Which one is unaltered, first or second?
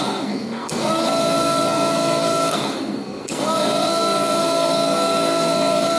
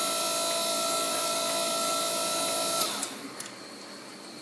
second